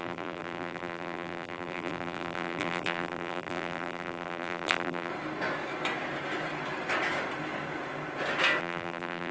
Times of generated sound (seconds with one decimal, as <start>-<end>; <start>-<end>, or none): 0.0-5.1; 8.6-9.3